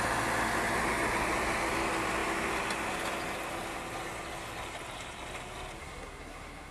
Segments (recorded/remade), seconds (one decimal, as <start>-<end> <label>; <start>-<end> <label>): 0.0-5.8 recorded; 5.8-6.7 remade